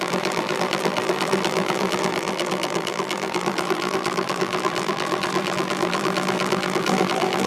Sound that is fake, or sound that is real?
fake